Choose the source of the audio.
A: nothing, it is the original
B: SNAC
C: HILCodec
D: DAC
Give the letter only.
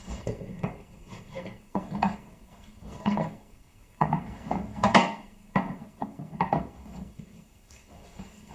B